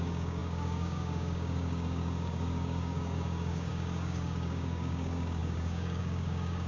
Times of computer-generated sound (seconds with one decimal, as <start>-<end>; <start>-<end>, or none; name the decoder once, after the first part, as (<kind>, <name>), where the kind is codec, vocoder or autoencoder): 0.0-6.7 (codec, DAC)